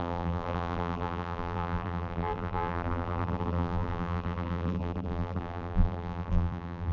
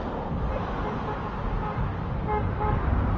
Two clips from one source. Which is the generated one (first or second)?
first